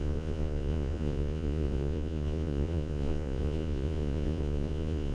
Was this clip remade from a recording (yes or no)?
yes